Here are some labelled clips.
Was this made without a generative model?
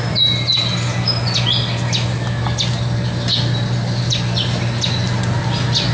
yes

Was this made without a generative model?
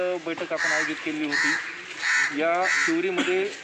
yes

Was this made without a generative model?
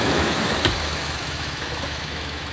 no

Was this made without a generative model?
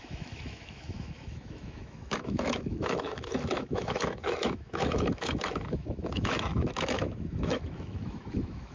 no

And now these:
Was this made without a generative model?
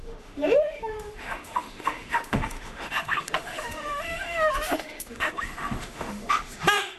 no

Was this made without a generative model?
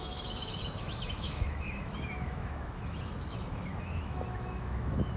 no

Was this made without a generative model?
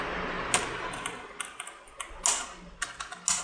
yes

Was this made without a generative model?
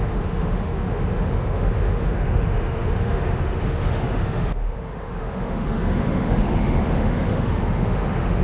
no